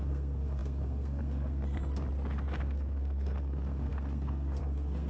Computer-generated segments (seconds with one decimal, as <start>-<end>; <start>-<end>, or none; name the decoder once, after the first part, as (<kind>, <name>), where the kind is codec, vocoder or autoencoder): 0.0-1.8 (codec, SNAC); 2.6-5.1